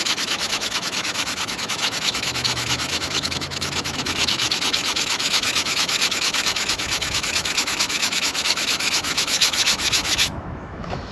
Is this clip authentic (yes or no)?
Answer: no